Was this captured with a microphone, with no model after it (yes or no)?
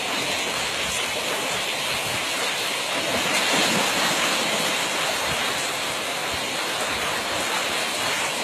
yes